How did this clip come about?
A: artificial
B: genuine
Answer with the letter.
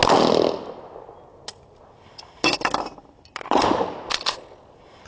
B